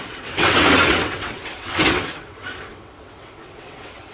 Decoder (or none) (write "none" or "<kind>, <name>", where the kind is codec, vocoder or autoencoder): vocoder, WaveNeXt